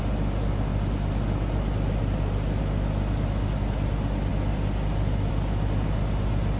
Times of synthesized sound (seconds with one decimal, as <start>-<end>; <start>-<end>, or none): none